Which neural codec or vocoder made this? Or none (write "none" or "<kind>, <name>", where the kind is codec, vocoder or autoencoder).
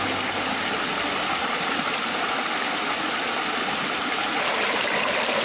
none